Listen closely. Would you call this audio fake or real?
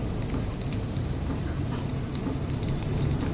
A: fake